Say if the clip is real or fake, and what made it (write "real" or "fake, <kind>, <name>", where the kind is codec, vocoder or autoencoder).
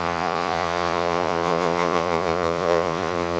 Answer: fake, vocoder, Vocos